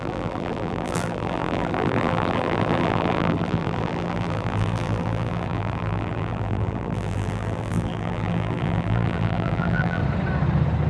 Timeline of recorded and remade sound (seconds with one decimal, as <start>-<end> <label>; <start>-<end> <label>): 0.0-10.0 remade; 10.0-10.9 recorded